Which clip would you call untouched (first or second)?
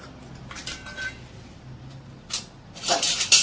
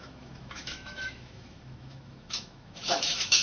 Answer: first